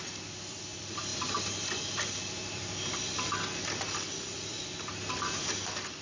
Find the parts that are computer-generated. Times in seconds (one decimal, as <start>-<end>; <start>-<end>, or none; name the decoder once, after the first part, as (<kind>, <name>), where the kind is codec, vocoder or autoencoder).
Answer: 0.0-1.1 (vocoder, BigVGAN v2); 2.1-6.0